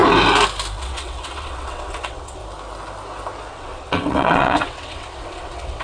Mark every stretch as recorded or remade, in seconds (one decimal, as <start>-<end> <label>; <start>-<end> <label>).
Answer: 0.0-0.8 recorded; 0.8-2.4 remade; 2.4-3.5 recorded; 3.5-5.8 remade